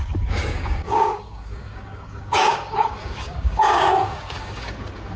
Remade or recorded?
remade